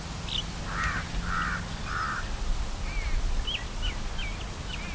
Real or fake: real